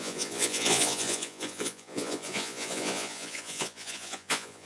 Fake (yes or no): yes